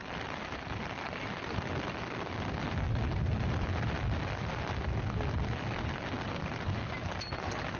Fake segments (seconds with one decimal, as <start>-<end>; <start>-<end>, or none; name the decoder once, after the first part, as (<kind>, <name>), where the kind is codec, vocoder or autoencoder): none